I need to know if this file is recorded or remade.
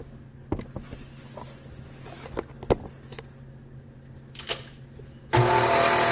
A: recorded